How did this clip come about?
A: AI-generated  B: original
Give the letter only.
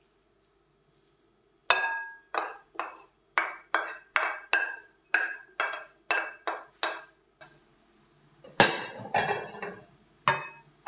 B